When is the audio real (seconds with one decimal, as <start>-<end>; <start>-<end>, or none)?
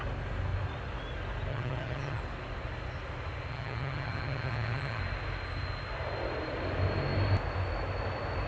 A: 0.0-1.5; 2.2-3.5; 5.0-8.5